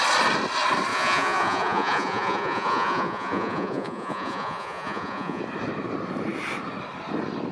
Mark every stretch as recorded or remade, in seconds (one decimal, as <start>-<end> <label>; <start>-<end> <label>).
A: 0.0-0.9 recorded; 0.9-5.4 remade; 5.4-7.5 recorded